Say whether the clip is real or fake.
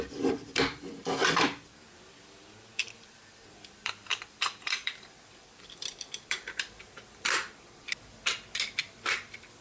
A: fake